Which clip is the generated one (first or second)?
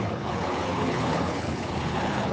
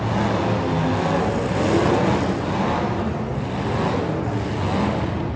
first